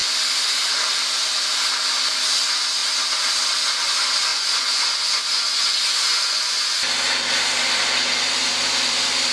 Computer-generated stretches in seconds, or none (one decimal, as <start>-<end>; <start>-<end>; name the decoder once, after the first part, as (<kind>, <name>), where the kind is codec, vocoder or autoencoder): 4.3-6.8 (vocoder, Vocos)